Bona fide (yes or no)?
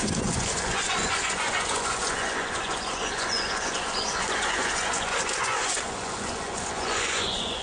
no